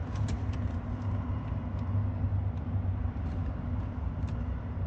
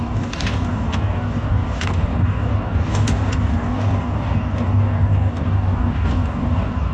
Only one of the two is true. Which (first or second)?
first